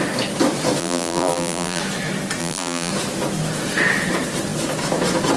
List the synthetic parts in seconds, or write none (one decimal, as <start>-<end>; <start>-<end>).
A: 0.8-1.8; 2.4-2.9